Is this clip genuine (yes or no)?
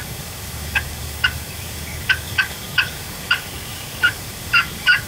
no